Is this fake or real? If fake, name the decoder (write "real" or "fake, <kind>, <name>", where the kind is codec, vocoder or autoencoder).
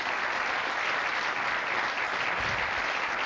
real